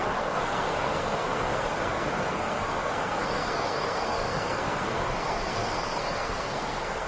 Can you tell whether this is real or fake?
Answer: fake